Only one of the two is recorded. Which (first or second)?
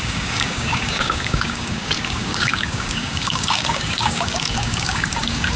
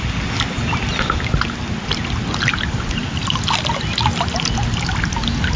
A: second